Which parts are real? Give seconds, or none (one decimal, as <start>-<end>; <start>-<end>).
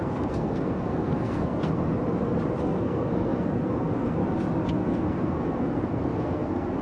1.8-2.6; 4.2-4.7